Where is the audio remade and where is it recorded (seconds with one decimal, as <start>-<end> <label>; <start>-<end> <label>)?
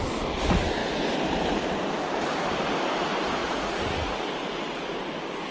0.0-3.4 recorded; 3.4-4.3 remade; 4.3-5.5 recorded